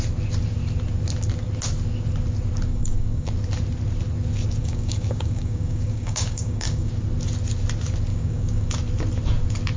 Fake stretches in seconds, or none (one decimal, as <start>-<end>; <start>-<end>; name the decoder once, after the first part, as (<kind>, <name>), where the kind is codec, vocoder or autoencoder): 2.7-3.3 (codec, DAC); 4.6-6.9; 8.1-8.7